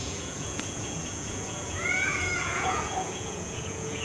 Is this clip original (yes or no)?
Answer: no